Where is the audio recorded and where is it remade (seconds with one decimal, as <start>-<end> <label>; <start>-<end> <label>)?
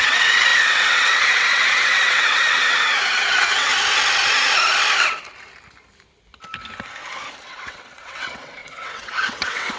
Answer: 0.0-3.7 remade; 3.7-7.4 recorded; 7.4-9.8 remade